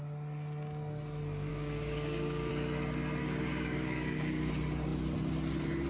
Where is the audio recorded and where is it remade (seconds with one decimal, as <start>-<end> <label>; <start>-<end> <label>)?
0.0-1.5 recorded; 1.5-2.5 remade; 2.5-3.2 recorded; 3.2-4.5 remade; 4.5-5.9 recorded